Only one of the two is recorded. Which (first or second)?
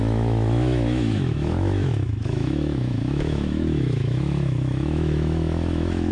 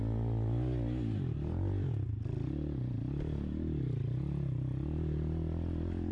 second